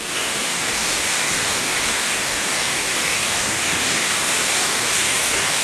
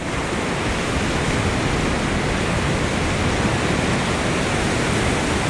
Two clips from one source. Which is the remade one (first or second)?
first